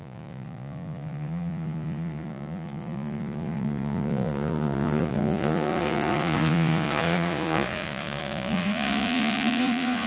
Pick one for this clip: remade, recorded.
remade